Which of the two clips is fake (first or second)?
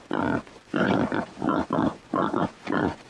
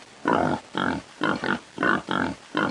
first